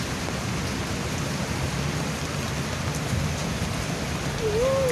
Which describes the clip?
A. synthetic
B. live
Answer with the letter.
B